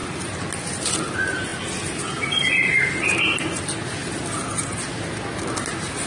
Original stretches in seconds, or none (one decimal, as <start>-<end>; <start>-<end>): 0.0-6.1